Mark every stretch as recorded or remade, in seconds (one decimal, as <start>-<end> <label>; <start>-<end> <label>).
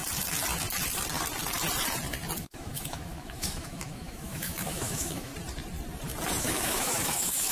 0.0-2.4 recorded; 2.4-5.3 remade; 5.3-6.4 recorded; 6.4-7.5 remade